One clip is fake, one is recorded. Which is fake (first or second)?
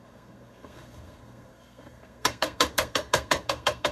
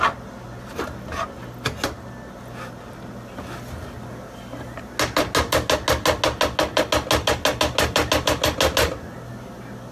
first